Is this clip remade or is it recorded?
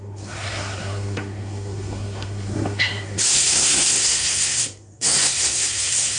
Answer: remade